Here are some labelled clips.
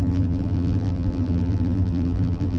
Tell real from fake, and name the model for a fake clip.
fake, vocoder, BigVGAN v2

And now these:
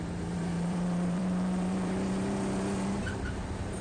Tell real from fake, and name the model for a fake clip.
fake, vocoder, BigVGAN v2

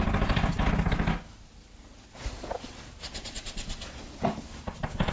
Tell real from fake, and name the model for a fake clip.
real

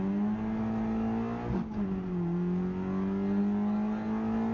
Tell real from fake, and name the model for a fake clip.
real